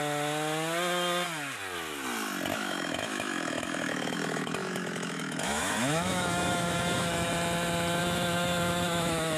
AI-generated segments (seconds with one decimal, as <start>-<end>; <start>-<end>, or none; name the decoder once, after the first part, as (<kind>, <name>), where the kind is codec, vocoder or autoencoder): 2.5-7.3 (autoencoder, DAC-VAE); 8.0-9.4